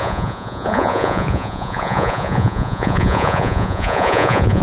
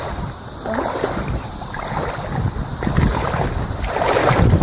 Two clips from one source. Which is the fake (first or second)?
first